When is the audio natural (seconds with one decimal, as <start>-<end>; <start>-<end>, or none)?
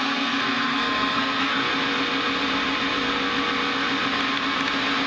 1.7-5.1